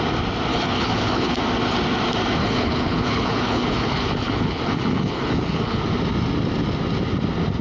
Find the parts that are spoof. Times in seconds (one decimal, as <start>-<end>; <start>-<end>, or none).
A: 0.5-1.4; 2.4-5.8